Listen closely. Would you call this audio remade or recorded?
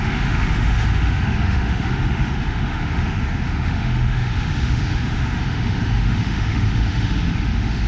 remade